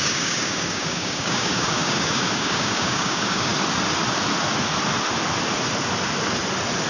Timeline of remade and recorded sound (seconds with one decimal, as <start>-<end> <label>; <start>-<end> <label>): 0.0-3.5 remade; 3.5-6.9 recorded